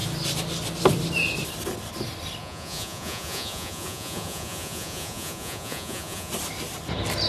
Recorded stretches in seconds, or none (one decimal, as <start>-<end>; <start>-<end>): 0.0-2.4; 6.3-7.3